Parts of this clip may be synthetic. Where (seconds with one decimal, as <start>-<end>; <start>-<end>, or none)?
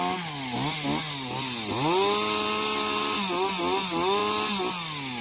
none